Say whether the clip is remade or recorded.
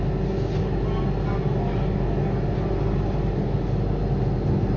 recorded